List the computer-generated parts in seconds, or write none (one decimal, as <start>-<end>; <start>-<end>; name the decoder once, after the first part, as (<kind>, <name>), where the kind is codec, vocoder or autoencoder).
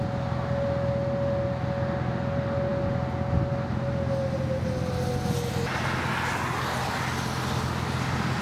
none